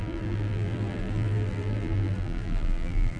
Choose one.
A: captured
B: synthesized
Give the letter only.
B